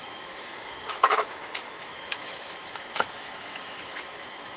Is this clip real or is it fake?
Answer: fake